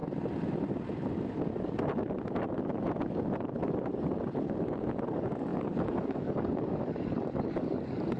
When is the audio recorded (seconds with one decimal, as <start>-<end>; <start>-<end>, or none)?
0.0-4.4